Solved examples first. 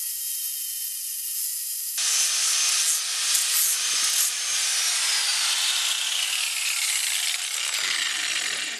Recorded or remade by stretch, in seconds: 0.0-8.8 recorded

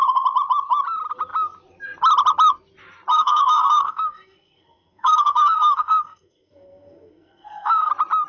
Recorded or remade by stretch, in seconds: 0.0-3.1 recorded; 3.1-7.9 remade; 7.9-8.3 recorded

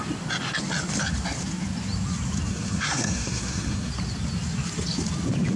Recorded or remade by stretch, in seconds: 0.0-2.5 recorded; 2.5-3.9 remade; 3.9-5.6 recorded

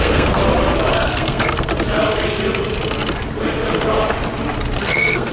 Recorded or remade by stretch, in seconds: 0.0-0.4 remade; 0.4-0.9 recorded; 0.9-1.7 remade; 1.7-4.8 recorded; 4.8-5.3 remade

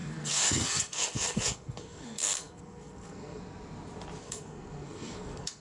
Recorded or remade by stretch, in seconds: 0.0-3.4 remade; 3.4-4.2 recorded; 4.2-5.6 remade

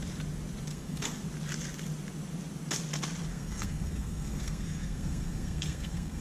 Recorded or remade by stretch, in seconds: 0.0-0.7 recorded; 0.7-1.2 remade; 1.2-3.3 recorded; 3.3-6.2 remade

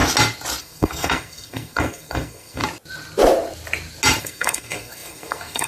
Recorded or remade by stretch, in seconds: 0.0-0.6 recorded; 0.6-2.6 remade; 2.6-4.2 recorded; 4.2-5.7 remade

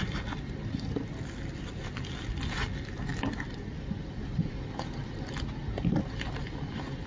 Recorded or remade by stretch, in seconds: 0.0-7.1 recorded